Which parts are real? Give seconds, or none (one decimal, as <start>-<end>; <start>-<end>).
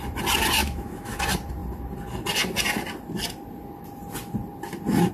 0.0-0.6; 1.2-5.1